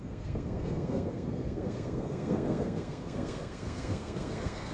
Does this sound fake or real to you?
fake